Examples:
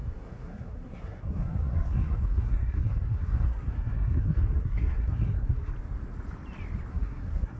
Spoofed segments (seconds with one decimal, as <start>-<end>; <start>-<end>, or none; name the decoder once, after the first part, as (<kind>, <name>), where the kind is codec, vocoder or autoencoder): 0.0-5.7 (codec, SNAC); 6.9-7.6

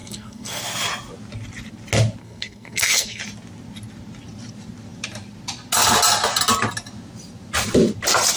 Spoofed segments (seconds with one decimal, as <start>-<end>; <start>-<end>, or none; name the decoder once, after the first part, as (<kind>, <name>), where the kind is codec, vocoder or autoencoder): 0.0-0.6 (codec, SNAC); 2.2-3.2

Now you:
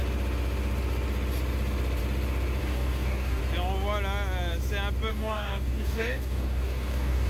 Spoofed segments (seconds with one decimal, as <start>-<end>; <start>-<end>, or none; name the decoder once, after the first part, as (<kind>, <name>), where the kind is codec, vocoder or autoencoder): 2.6-3.4 (codec, DAC); 5.1-7.3